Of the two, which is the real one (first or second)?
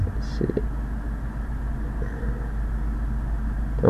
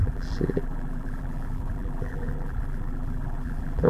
first